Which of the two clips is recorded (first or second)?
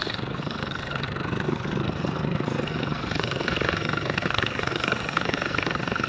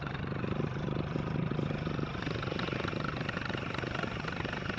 second